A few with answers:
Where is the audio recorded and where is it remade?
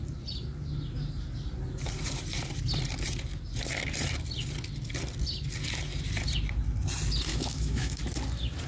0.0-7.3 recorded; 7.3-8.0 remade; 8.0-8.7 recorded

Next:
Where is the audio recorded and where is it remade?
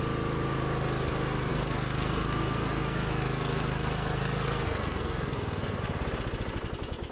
0.0-1.5 recorded; 1.5-5.8 remade; 5.8-7.1 recorded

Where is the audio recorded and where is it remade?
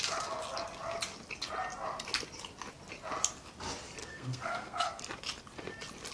0.0-4.0 recorded; 4.0-5.0 remade; 5.0-6.1 recorded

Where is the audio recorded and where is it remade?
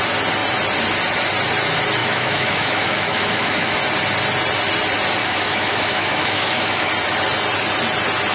0.0-2.0 recorded; 2.0-3.8 remade; 3.8-5.2 recorded; 5.2-6.9 remade; 6.9-8.3 recorded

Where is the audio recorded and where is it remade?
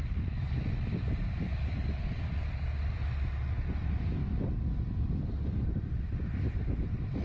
0.0-3.0 remade; 3.0-3.8 recorded; 3.8-7.2 remade